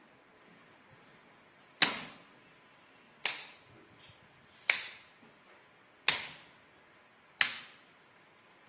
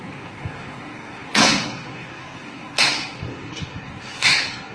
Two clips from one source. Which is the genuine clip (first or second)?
first